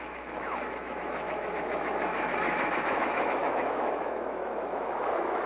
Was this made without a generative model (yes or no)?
no